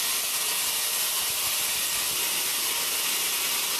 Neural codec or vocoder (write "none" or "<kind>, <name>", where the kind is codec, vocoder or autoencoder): none